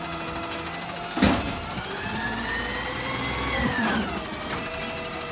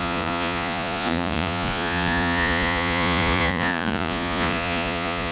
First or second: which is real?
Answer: first